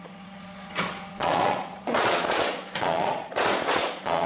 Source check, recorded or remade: remade